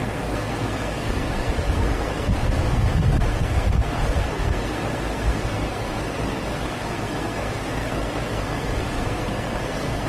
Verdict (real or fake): fake